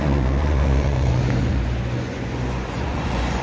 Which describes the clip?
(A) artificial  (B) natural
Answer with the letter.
A